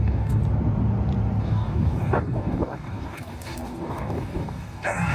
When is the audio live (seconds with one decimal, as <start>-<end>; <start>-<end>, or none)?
0.4-1.4